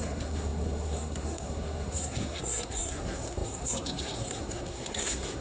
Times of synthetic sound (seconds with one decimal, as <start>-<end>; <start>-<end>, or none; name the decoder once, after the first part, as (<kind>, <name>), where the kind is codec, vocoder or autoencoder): 0.0-5.4 (codec, SNAC)